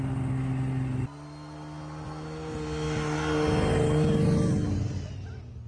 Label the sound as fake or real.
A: real